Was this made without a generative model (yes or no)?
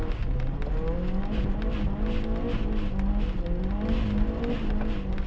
yes